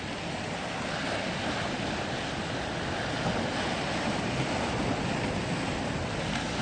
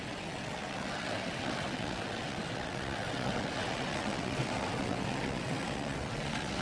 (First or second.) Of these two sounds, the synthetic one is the second